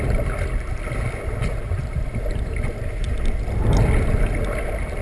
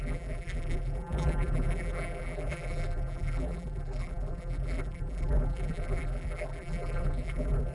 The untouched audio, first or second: first